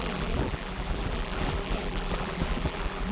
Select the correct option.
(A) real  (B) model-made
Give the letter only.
B